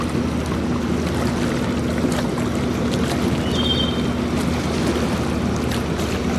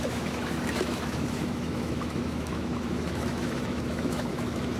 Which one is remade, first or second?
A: second